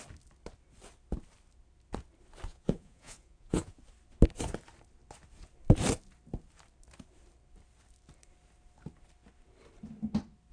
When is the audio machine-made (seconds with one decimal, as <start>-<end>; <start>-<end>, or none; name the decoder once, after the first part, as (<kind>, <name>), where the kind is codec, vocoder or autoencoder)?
2.5-3.8 (vocoder, Vocos)